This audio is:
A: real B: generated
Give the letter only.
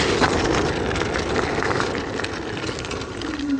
A